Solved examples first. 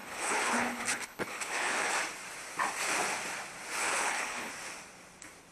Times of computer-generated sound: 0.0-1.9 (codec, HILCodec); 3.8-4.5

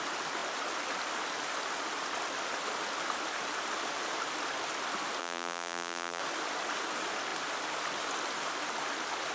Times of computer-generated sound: 5.2-6.2 (vocoder, BigVGAN v2)

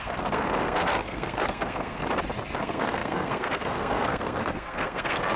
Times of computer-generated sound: 0.0-2.0 (codec, SNAC); 2.6-5.4